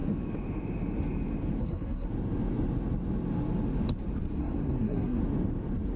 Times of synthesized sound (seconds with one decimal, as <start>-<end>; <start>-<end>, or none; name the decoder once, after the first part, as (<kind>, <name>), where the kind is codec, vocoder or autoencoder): 1.6-2.1 (codec, SNAC); 4.4-5.2